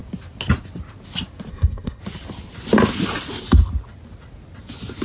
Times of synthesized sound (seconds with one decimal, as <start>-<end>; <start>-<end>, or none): 1.5-2.0